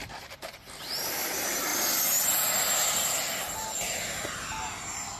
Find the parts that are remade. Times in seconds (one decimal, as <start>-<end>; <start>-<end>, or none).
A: 0.0-1.1